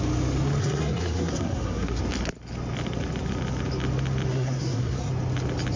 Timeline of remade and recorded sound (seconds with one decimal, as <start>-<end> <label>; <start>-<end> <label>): 0.0-0.6 recorded; 0.6-2.0 remade; 2.0-4.3 recorded; 4.3-5.1 remade; 5.1-5.8 recorded